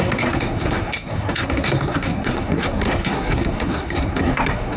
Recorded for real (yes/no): no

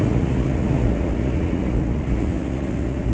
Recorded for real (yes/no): no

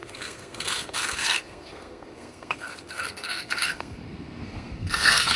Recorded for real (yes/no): no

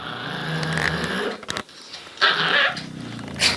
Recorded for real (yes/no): yes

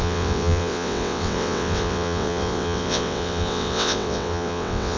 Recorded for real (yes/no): no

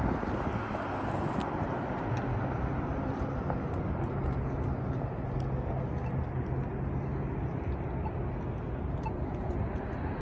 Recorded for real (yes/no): yes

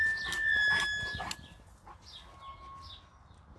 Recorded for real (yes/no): yes